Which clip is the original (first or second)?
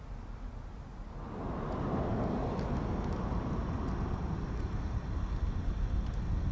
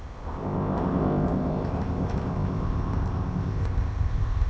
first